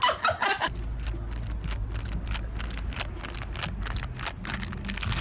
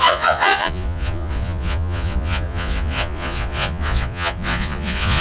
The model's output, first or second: second